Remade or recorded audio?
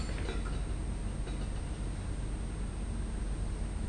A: recorded